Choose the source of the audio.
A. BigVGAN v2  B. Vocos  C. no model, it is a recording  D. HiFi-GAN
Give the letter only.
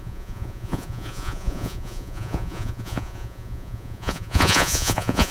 B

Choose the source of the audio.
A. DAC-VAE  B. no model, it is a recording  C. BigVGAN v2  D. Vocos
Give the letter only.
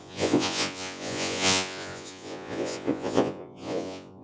D